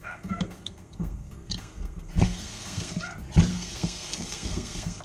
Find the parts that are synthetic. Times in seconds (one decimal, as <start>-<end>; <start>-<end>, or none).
0.0-3.0; 3.5-5.0